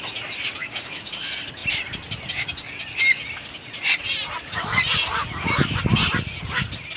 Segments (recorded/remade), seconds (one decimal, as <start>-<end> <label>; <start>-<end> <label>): 0.0-0.6 recorded; 0.6-1.1 remade; 1.1-7.0 recorded